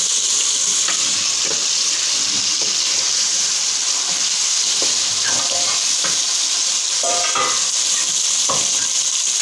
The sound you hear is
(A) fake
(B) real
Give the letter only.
B